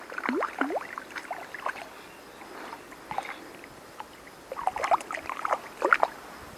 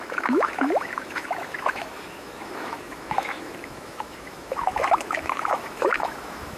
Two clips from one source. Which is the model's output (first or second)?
second